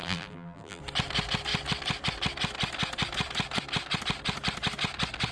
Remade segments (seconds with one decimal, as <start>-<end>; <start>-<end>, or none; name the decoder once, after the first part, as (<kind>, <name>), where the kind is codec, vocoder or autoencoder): 0.0-0.8 (vocoder, BigVGAN v2)